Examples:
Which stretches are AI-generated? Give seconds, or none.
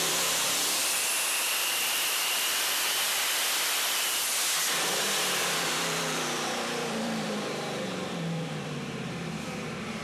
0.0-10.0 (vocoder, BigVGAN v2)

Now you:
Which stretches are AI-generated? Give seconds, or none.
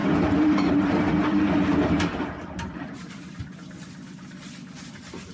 0.0-3.2 (vocoder, BigVGAN v2)